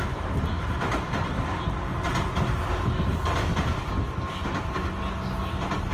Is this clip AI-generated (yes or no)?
no